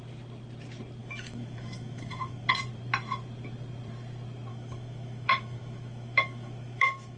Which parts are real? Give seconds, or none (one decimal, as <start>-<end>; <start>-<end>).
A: 0.0-1.0; 2.5-4.5